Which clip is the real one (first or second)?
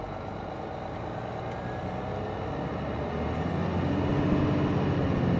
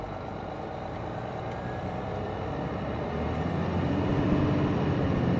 first